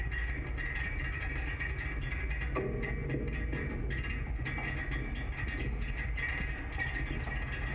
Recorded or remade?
recorded